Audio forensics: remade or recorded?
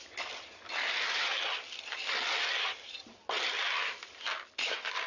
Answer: recorded